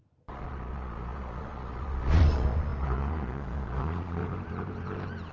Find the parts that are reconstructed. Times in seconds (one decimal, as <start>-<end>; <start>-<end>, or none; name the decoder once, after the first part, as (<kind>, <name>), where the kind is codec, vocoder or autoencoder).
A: 0.0-4.2 (vocoder, Vocos)